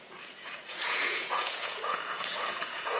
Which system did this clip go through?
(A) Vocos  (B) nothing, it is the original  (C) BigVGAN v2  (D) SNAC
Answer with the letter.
A